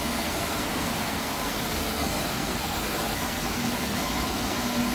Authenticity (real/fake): fake